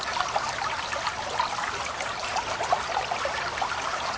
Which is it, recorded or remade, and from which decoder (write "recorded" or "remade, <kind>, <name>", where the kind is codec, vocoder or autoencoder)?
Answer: recorded